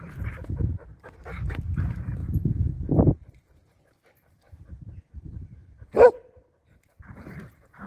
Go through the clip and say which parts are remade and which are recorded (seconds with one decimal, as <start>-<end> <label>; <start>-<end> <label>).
0.0-5.6 remade; 5.6-6.1 recorded; 6.1-7.9 remade